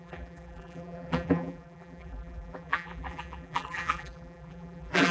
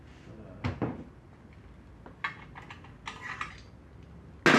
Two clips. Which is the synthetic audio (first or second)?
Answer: first